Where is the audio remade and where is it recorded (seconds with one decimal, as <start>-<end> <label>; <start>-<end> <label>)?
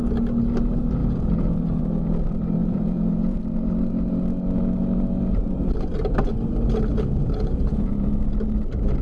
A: 0.0-1.0 recorded; 1.0-1.8 remade; 1.8-2.6 recorded; 2.6-3.4 remade; 3.4-6.9 recorded; 6.9-8.1 remade; 8.1-9.0 recorded